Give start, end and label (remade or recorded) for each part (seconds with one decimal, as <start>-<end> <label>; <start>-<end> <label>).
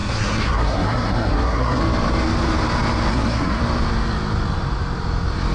0.0-1.8 remade; 1.8-3.1 recorded; 3.1-3.6 remade; 3.6-5.5 recorded